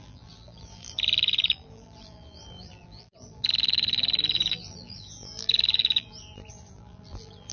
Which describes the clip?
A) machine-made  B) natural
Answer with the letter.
A